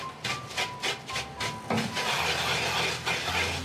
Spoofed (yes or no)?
no